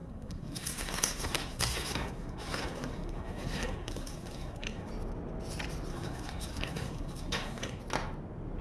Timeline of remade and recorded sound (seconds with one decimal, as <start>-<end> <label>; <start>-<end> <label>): 0.0-4.9 remade; 4.9-5.9 recorded; 5.9-7.8 remade; 7.8-8.6 recorded